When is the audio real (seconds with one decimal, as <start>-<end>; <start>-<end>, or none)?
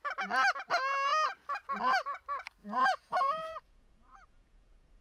0.0-2.6